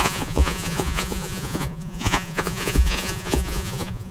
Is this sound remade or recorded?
remade